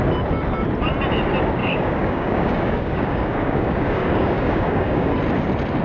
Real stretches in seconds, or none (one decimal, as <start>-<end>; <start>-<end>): 0.0-1.6; 5.1-5.8